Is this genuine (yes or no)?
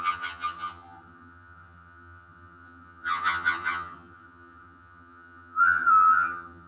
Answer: no